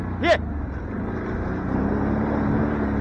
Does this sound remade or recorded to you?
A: recorded